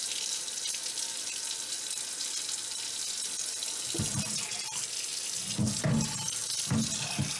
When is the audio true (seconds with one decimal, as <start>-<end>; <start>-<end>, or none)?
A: 0.0-7.4